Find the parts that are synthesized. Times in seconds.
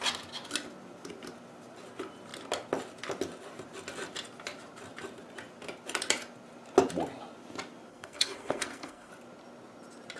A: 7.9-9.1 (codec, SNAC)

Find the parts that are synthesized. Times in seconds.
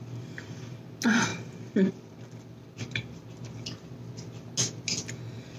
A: none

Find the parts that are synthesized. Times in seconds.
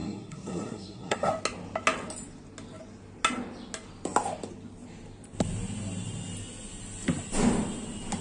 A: 0.0-1.3 (codec, SNAC)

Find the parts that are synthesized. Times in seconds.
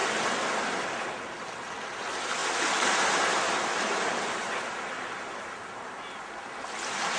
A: none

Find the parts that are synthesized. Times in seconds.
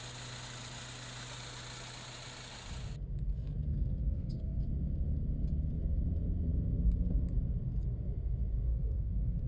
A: 3.7-4.7 (codec, SNAC); 8.7-9.5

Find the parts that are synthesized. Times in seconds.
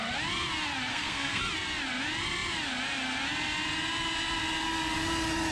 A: 0.9-1.4 (codec, SNAC)